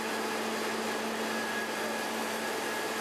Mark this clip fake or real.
real